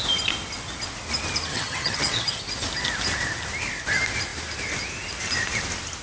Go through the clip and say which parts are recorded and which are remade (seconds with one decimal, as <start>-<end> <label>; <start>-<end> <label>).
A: 0.0-1.5 recorded; 1.5-2.4 remade; 2.4-6.0 recorded